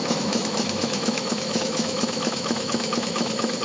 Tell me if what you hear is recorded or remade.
remade